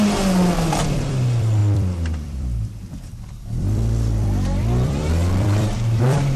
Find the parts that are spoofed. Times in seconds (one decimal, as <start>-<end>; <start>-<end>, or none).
0.0-6.4